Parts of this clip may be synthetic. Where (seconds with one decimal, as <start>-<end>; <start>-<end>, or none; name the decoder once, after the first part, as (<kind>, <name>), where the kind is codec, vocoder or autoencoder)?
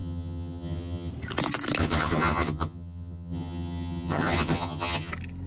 0.0-1.1 (vocoder, HiFi-GAN); 1.8-5.1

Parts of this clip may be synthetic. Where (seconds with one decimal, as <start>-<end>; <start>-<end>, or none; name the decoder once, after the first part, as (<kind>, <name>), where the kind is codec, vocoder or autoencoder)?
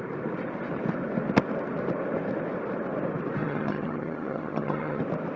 3.4-5.0 (vocoder, HiFi-GAN)